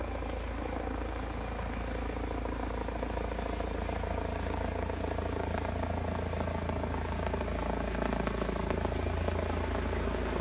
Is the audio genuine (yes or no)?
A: yes